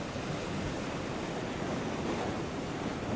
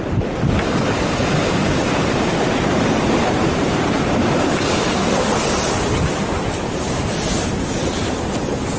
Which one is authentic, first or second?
first